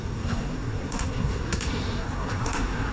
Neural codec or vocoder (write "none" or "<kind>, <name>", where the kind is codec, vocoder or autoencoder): codec, SNAC